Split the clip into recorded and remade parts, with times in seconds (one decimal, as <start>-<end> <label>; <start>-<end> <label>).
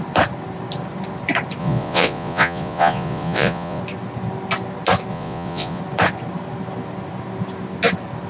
0.0-1.6 recorded; 1.6-3.8 remade; 3.8-5.1 recorded; 5.1-5.8 remade; 5.8-8.3 recorded